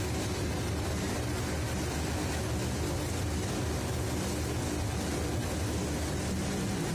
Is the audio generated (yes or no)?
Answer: no